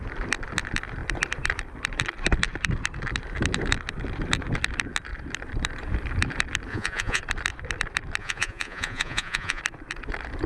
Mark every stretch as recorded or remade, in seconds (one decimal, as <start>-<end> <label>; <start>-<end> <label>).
0.0-6.7 recorded; 6.7-7.2 remade; 7.2-8.2 recorded; 8.2-9.6 remade; 9.6-10.5 recorded